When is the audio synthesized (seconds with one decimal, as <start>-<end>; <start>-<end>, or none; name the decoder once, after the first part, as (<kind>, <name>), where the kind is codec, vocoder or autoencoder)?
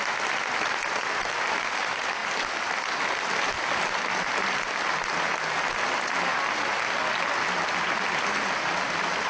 none